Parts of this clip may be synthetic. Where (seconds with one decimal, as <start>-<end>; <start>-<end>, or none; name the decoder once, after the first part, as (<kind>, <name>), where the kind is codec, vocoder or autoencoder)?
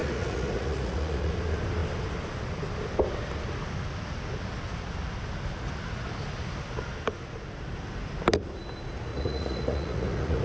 0.0-1.3 (vocoder, Vocos); 9.1-10.4